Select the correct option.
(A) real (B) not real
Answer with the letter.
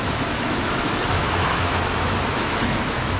B